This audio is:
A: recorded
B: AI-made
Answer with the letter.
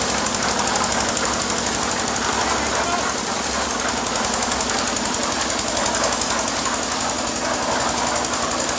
A